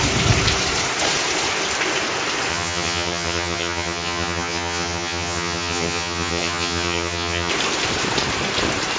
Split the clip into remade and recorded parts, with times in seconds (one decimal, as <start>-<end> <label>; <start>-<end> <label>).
0.0-2.5 recorded; 2.5-7.5 remade; 7.5-9.0 recorded